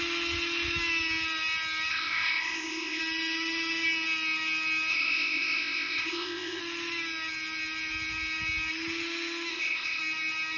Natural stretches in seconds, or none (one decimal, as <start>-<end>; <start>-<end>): 0.0-1.9; 3.0-4.9; 6.6-9.5; 10.0-10.6